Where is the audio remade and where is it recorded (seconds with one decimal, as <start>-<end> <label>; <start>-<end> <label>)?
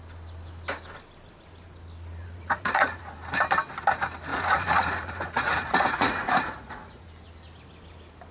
0.0-2.2 recorded; 2.2-3.0 remade; 3.0-4.3 recorded; 4.3-7.1 remade; 7.1-8.3 recorded